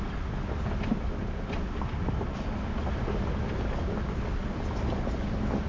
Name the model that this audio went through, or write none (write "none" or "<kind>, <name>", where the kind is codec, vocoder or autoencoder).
none